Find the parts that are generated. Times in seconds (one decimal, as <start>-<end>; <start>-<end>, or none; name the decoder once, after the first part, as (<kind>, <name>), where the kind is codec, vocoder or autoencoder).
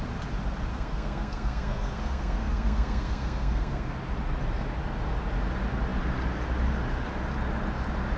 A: 0.7-3.9 (codec, SNAC)